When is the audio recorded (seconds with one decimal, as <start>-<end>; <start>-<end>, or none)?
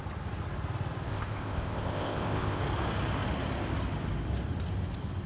0.0-1.1; 2.6-5.3